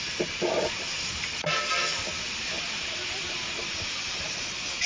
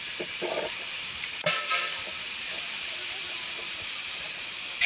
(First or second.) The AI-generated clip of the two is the second